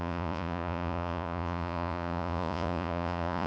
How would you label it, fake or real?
fake